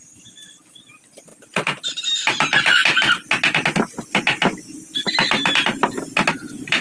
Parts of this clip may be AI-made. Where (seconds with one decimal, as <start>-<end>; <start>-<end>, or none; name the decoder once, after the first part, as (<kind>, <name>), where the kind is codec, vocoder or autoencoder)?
none